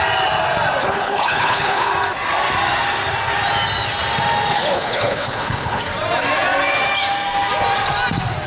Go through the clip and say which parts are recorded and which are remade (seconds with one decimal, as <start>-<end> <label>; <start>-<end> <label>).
0.0-0.8 recorded; 0.8-1.9 remade; 1.9-4.5 recorded; 4.5-5.8 remade; 5.8-8.5 recorded